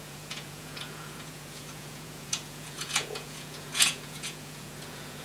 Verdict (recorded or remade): remade